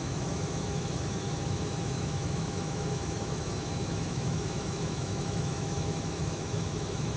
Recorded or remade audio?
remade